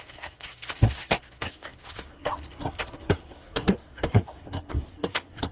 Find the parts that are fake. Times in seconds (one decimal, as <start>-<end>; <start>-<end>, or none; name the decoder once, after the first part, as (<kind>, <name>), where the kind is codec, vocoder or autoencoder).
0.0-5.5 (codec, SNAC)

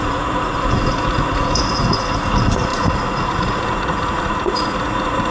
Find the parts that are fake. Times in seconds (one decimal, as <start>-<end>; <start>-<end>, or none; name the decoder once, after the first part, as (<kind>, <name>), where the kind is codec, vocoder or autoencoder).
0.0-5.3 (vocoder, Vocos)